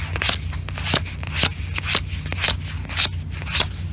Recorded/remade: recorded